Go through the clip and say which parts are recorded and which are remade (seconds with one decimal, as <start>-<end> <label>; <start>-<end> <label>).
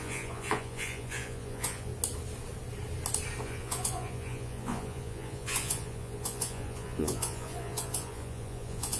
0.0-1.9 remade; 1.9-3.4 recorded; 3.4-9.0 remade